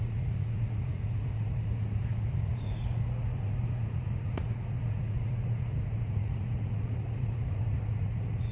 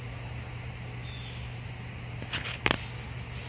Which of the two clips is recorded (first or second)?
second